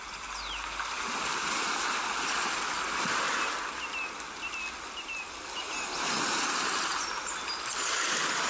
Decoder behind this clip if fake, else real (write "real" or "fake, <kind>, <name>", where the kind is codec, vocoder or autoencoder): real